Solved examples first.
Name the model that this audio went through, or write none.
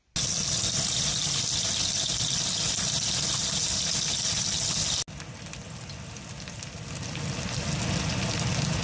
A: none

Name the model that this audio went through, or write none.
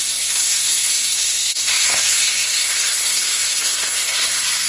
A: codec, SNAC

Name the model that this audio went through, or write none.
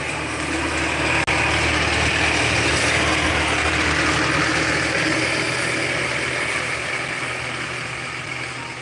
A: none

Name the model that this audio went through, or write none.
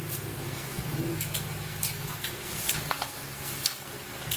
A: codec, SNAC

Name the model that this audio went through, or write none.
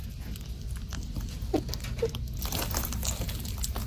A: none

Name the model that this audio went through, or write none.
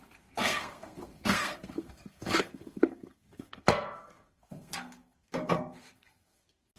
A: codec, SNAC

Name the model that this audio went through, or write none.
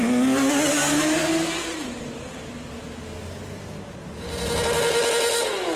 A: none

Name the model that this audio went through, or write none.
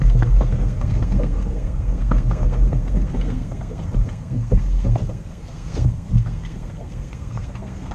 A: codec, SNAC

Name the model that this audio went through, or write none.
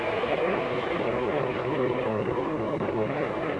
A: codec, SNAC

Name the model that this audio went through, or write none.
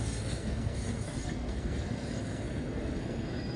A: codec, SNAC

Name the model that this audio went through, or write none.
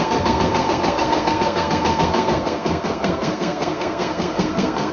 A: codec, SNAC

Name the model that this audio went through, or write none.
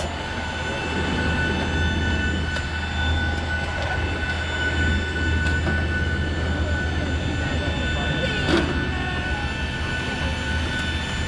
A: none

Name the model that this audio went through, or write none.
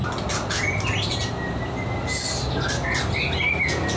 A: none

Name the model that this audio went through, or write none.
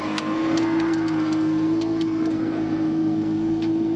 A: codec, SNAC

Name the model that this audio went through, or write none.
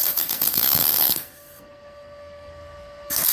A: codec, SNAC